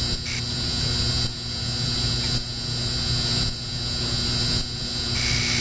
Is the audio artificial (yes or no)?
no